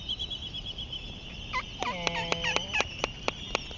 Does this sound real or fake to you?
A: real